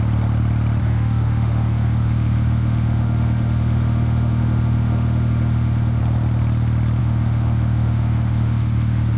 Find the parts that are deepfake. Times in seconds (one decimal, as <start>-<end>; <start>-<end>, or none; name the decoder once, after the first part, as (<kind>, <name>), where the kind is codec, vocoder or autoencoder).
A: 0.8-6.0 (autoencoder, DAC-VAE); 7.0-9.2